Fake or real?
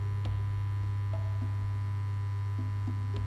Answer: real